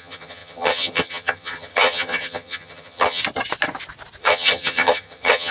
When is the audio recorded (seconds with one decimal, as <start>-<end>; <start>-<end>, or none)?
3.2-4.2